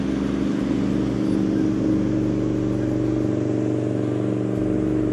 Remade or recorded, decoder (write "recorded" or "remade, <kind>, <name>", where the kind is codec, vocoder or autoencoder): recorded